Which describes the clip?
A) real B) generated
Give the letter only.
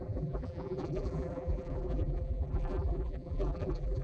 B